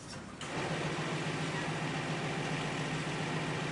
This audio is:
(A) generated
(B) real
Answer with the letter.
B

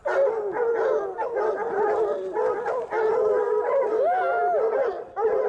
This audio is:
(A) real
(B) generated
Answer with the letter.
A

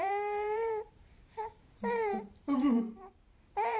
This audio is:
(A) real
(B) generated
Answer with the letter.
B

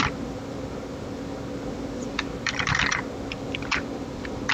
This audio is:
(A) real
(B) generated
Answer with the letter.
A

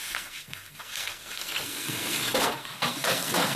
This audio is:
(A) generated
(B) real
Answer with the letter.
A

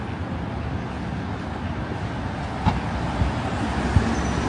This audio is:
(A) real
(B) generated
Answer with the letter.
A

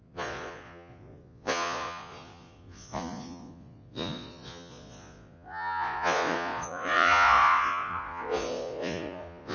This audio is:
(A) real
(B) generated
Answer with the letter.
B